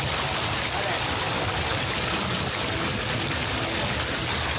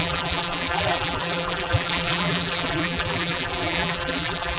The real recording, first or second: first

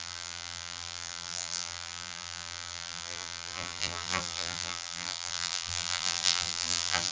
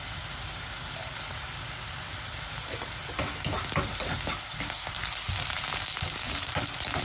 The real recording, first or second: second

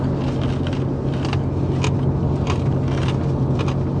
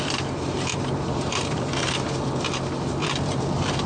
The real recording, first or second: first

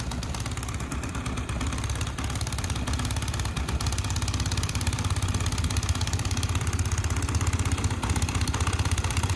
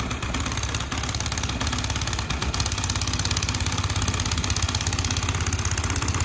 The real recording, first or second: second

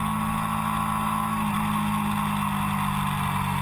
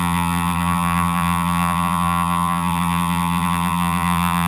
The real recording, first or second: first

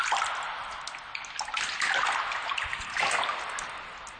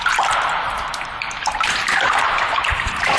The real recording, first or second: first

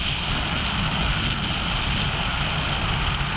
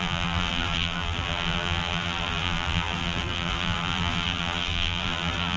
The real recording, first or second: first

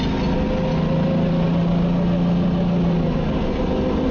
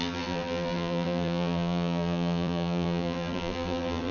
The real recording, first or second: first